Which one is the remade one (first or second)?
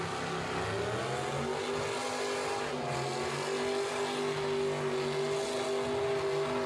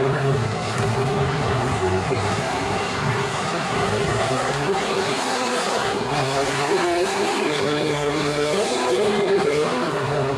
second